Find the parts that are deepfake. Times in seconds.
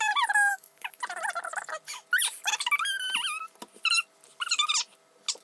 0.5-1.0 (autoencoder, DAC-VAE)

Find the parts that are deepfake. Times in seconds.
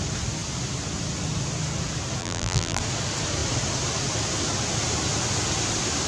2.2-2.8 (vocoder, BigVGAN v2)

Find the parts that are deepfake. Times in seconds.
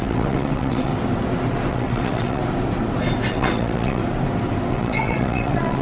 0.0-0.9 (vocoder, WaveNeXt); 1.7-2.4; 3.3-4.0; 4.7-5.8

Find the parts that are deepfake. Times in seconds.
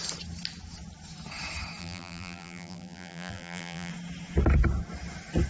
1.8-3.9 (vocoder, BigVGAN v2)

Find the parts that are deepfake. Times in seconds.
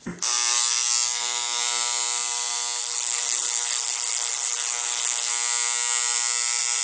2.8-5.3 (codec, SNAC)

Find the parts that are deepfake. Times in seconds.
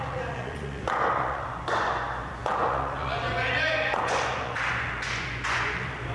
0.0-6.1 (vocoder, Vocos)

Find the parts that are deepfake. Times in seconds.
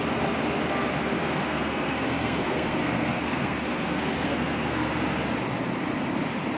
1.2-4.9 (codec, SNAC)